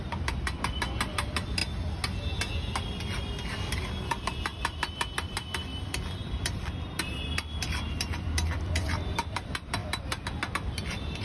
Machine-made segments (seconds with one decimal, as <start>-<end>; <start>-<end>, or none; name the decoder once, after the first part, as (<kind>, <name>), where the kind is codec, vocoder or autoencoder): 0.0-1.6 (vocoder, BigVGAN v2); 3.7-11.2